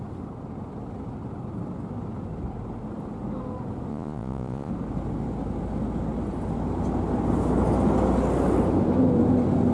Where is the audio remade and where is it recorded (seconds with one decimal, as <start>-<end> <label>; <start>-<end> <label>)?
0.0-3.9 recorded; 3.9-4.7 remade; 4.7-9.7 recorded